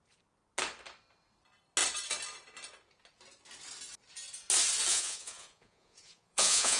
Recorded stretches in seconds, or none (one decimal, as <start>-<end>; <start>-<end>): 0.0-4.9